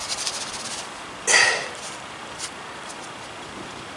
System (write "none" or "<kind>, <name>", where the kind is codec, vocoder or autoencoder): none